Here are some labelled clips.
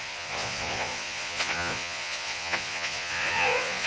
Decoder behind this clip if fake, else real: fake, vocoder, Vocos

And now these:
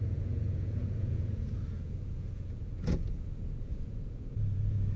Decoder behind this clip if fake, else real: fake, vocoder, Vocos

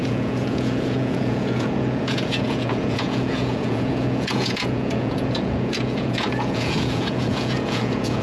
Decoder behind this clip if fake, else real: fake, vocoder, Vocos